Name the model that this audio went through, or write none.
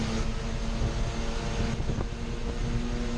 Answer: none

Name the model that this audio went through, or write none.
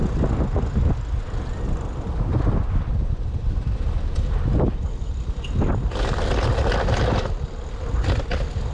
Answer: none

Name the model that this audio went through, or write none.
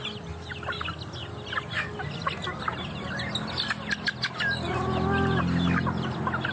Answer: none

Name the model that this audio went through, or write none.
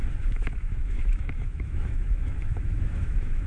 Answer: autoencoder, DAC-VAE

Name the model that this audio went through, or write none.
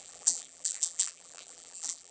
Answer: vocoder, BigVGAN v2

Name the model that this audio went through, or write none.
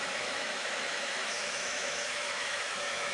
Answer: autoencoder, DAC-VAE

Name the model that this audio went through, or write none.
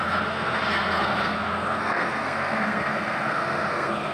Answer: codec, SNAC